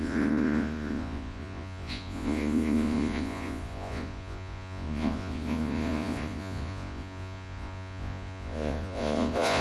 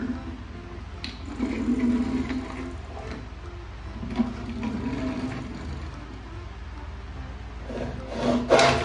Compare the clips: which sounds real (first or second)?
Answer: second